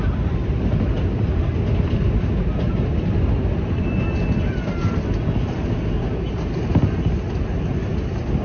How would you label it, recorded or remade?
recorded